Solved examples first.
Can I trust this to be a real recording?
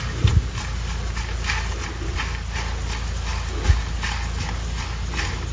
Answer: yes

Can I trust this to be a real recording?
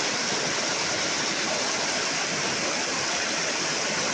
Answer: yes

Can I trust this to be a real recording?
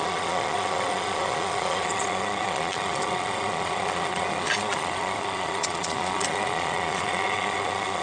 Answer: no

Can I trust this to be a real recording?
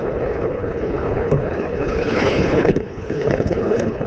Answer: no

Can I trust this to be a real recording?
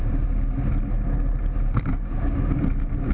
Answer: yes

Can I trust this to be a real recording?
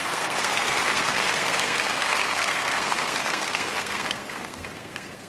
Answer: no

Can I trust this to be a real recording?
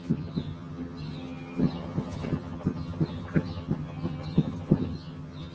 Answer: no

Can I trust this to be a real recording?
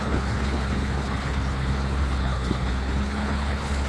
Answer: no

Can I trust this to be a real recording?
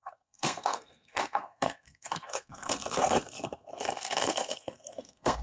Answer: no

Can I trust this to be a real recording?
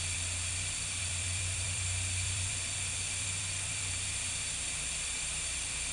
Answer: no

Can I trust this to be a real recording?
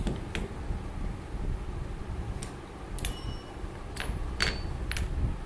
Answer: yes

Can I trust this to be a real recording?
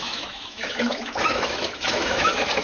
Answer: no